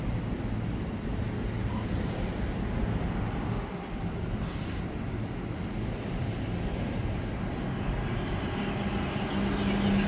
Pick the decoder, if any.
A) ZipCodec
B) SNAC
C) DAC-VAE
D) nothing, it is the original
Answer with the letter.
D